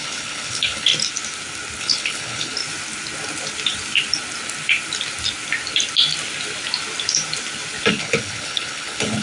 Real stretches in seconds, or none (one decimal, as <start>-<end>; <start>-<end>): 0.9-1.8; 2.6-7.9

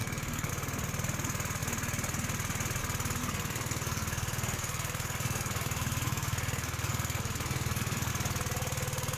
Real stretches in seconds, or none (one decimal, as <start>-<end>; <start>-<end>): 0.5-3.2; 8.1-9.2

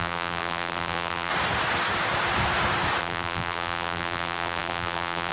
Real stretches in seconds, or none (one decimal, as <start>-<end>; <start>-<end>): 1.3-3.0